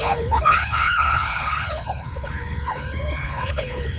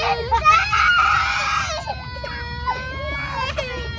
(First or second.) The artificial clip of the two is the first